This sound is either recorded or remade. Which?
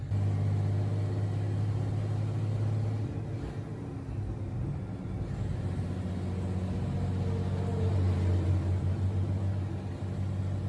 recorded